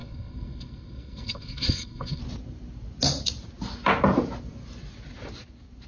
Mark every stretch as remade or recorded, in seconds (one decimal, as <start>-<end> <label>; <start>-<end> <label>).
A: 0.0-2.2 remade; 2.2-5.9 recorded